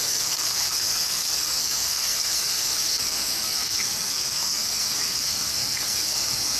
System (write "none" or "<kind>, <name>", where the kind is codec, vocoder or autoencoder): codec, SNAC